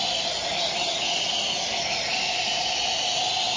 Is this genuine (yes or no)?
yes